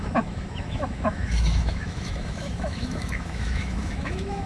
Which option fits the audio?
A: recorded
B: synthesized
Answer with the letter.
B